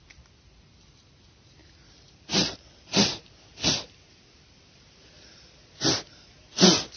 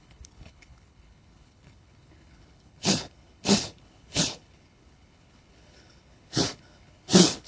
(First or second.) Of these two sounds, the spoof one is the second